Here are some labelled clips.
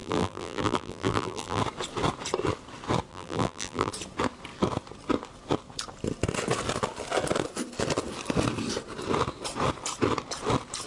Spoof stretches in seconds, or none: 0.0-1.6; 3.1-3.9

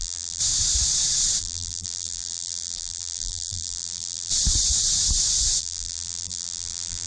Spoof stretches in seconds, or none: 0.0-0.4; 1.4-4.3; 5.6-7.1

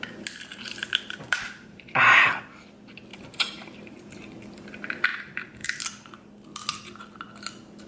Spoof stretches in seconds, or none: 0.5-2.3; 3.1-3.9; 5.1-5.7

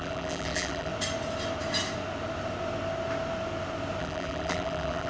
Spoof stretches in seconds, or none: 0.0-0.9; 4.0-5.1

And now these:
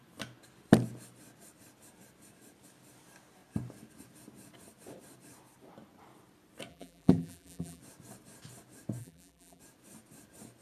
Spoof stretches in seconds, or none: 6.7-7.8; 9.0-9.6